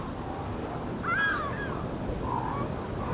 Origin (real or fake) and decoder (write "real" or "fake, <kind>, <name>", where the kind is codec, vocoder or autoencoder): real